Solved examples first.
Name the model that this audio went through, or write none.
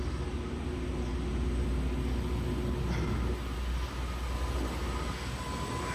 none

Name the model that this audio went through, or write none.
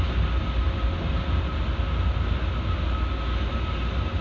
none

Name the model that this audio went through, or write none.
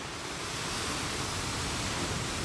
none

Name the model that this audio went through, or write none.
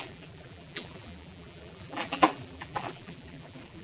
vocoder, BigVGAN v2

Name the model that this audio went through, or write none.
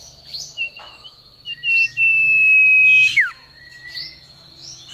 autoencoder, DAC-VAE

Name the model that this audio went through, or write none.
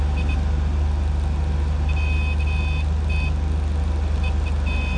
none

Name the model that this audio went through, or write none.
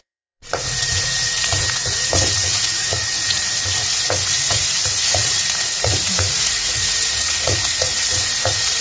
vocoder, Vocos